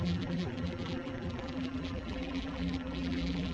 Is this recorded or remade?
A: remade